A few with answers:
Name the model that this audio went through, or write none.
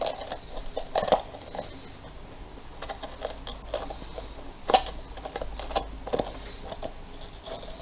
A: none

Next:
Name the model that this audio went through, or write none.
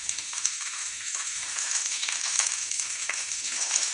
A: autoencoder, DAC-VAE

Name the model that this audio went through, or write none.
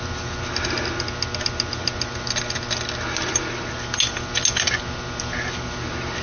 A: none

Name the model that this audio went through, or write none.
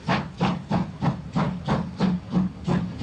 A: none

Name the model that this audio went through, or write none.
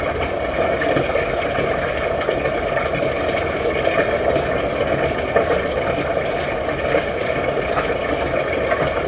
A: none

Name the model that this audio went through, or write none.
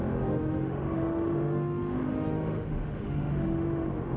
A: autoencoder, DAC-VAE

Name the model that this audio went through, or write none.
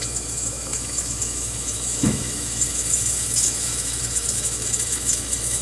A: autoencoder, DAC-VAE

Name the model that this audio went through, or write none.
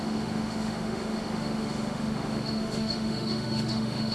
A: autoencoder, DAC-VAE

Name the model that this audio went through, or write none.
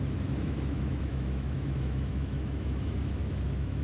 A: autoencoder, DAC-VAE